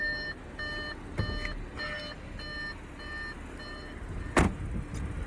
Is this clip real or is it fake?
real